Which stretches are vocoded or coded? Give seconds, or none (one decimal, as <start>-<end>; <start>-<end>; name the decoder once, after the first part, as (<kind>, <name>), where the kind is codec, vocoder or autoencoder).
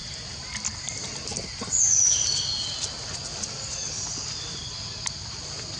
none